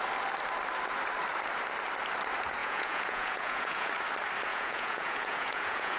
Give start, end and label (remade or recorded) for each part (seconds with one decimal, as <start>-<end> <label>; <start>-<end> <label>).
0.0-2.6 recorded; 2.6-3.9 remade; 3.9-4.5 recorded; 4.5-6.0 remade